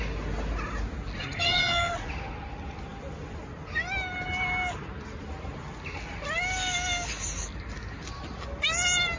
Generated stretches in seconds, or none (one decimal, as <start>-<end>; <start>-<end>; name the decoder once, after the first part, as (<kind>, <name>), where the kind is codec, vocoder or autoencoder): 1.2-1.9 (vocoder, HiFi-GAN)